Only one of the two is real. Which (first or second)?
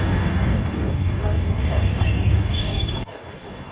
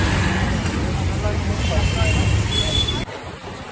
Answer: second